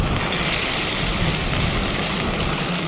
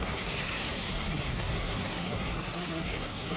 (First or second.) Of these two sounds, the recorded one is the first